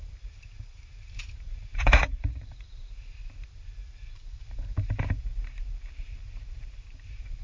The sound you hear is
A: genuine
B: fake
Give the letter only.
B